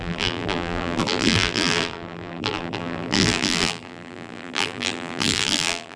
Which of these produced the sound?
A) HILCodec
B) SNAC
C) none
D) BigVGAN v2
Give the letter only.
D